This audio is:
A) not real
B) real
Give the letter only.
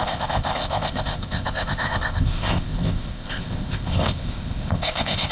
A